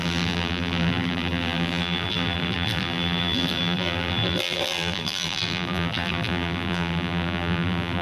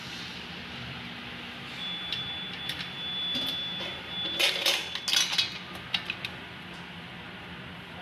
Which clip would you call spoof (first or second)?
first